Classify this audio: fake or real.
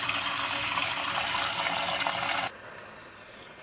real